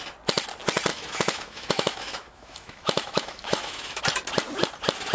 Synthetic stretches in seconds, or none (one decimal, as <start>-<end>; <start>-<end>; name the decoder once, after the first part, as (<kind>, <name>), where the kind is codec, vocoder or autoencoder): 0.9-4.0 (autoencoder, DAC-VAE)